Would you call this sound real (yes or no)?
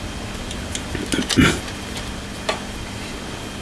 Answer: yes